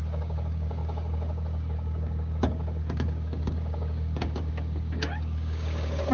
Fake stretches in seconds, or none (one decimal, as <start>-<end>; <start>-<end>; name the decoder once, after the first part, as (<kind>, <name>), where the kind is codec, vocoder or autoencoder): 0.0-6.1 (codec, DAC)

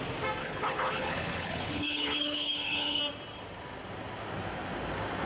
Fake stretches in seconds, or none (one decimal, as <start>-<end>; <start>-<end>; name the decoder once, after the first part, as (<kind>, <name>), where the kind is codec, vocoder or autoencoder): 0.4-3.0 (codec, HILCodec)

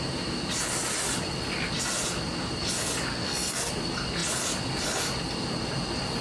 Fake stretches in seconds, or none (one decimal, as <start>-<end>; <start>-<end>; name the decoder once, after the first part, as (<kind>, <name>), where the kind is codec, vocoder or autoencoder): 3.1-3.7 (codec, SNAC)